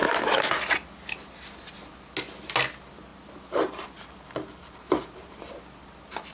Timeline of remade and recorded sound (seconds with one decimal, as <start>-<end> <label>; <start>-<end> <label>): 0.0-3.1 recorded; 3.1-5.5 remade; 5.5-6.3 recorded